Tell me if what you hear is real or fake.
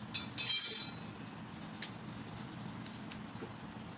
real